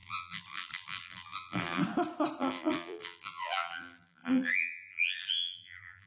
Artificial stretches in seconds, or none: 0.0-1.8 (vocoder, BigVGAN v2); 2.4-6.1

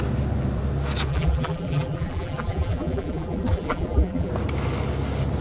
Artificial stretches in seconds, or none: 1.1-4.3 (vocoder, BigVGAN v2)

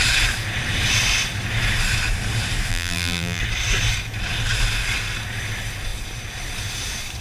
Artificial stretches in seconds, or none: 2.7-3.4 (vocoder, BigVGAN v2)